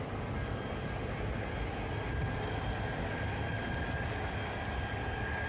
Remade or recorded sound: recorded